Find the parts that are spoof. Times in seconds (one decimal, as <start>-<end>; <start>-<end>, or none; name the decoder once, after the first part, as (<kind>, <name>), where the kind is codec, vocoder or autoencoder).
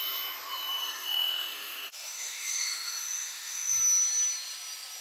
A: 0.8-3.7 (autoencoder, DAC-VAE)